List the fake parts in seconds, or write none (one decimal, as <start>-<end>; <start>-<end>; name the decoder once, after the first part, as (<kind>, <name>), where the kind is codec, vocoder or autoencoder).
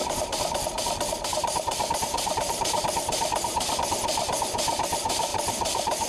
0.0-3.7 (vocoder, BigVGAN v2); 5.3-6.1